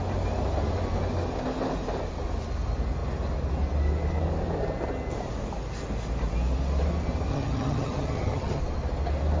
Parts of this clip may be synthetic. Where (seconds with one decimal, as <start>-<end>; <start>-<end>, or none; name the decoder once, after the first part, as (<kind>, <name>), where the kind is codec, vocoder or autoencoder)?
7.3-8.6 (vocoder, HiFi-GAN)